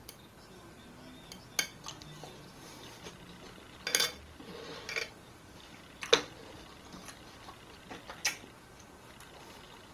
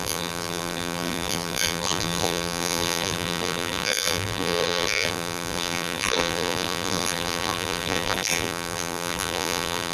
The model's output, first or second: second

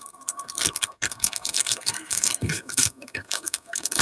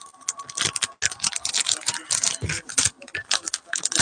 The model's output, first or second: first